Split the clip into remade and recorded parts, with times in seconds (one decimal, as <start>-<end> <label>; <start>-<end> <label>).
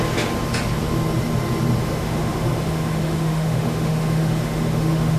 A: 0.0-1.8 recorded; 1.8-5.2 remade